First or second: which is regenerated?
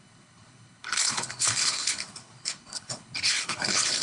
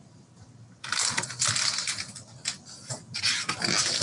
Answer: first